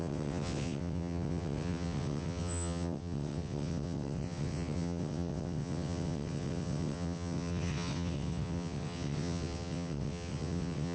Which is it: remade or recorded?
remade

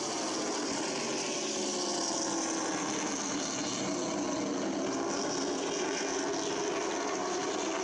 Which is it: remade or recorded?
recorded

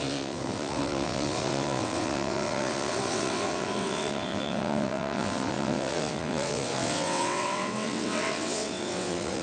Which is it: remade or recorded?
remade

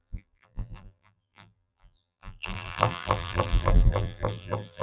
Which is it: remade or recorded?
remade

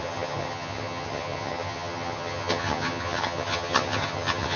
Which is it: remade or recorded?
remade